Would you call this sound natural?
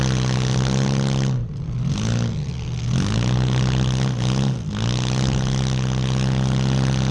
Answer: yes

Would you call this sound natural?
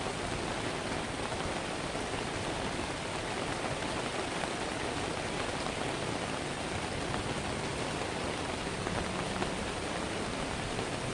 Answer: yes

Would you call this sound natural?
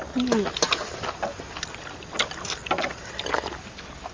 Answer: yes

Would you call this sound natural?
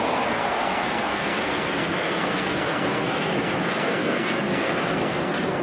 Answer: no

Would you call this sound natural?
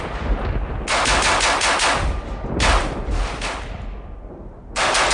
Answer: yes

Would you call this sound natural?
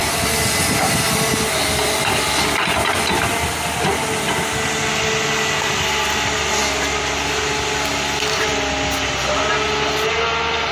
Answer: yes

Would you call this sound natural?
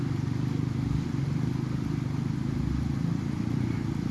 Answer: yes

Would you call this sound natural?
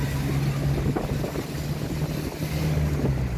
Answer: yes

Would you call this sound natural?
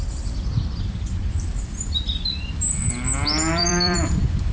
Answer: no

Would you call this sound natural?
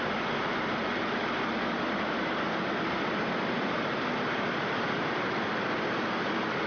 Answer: no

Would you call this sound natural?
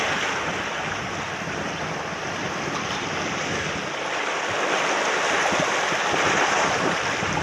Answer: yes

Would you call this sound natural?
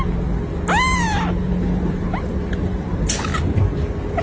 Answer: yes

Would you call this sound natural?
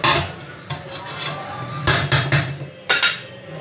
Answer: yes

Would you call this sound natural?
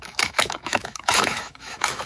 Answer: no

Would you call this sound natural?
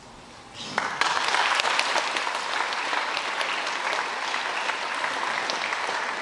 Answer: yes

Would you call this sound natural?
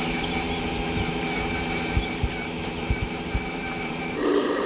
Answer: no